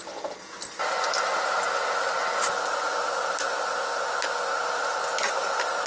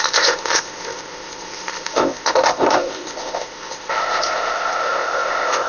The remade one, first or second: second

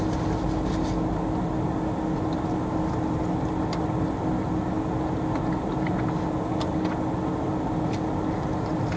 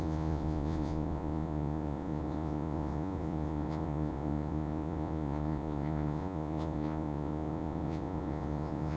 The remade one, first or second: second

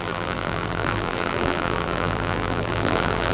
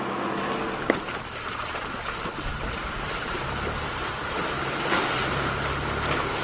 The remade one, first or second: first